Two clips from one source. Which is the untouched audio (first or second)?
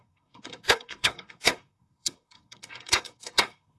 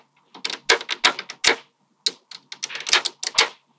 second